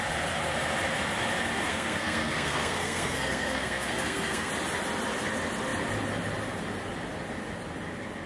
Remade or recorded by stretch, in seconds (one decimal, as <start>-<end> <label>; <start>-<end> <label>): 0.0-1.7 recorded; 1.7-4.5 remade; 4.5-8.3 recorded